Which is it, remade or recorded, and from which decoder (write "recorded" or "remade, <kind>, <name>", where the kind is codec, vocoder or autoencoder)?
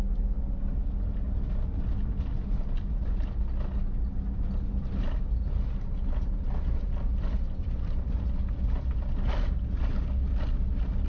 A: recorded